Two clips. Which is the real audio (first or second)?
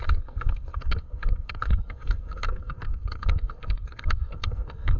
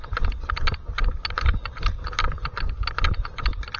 second